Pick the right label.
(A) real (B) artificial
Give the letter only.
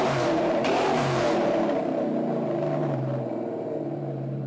B